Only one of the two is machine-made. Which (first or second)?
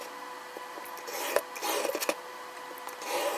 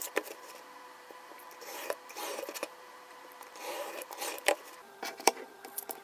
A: second